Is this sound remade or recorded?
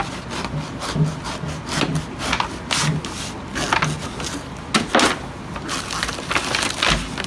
recorded